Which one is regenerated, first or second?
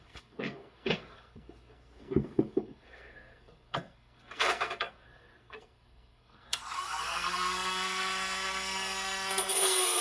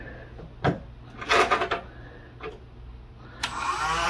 first